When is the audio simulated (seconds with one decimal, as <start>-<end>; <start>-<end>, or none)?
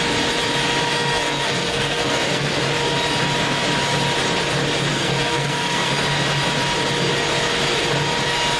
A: 0.8-2.6; 4.9-5.9